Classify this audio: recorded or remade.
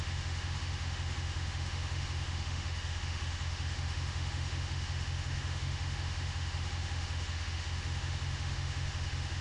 remade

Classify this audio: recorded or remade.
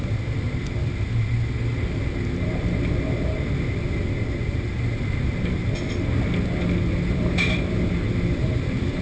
recorded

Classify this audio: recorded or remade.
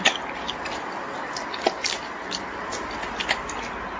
recorded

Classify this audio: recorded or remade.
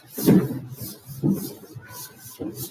recorded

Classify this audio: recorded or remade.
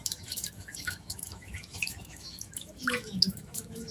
remade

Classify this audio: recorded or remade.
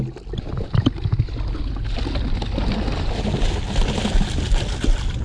recorded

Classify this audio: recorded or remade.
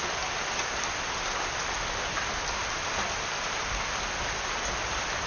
recorded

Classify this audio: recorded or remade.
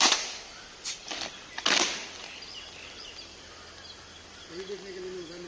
recorded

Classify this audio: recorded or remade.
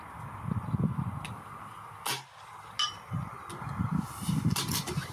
recorded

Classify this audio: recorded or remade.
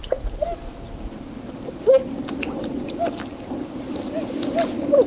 recorded